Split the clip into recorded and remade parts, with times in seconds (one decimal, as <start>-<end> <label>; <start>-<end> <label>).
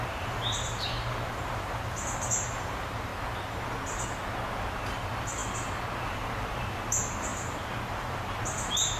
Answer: 0.0-3.1 remade; 3.1-4.6 recorded; 4.6-5.4 remade; 5.4-6.0 recorded; 6.0-9.0 remade